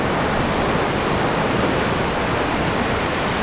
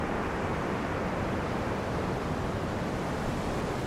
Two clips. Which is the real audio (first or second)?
second